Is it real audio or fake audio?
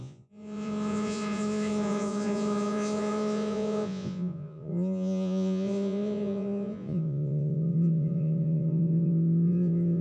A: fake